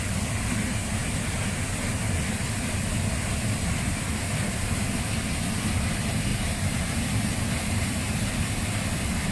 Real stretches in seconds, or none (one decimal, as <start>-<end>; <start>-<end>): 0.0-6.3; 8.6-9.3